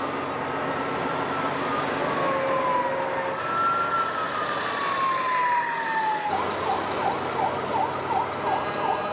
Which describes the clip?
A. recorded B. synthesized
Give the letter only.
A